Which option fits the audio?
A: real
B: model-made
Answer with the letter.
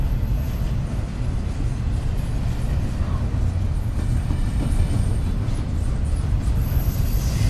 A